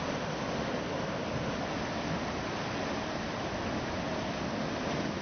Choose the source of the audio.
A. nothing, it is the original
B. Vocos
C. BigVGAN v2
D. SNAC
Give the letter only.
A